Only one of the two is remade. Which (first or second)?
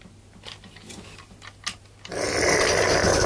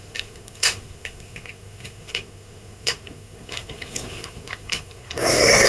second